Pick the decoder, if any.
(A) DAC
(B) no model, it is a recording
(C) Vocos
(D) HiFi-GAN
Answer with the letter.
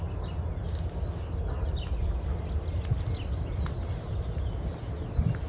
B